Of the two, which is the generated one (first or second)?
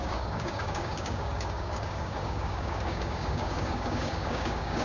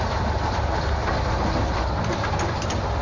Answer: first